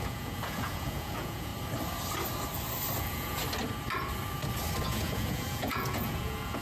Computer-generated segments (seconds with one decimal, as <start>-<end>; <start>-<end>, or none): 0.0-1.5; 3.0-3.4; 4.8-6.6